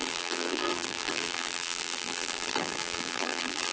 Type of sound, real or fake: fake